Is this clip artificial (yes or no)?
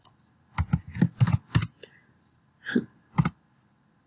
no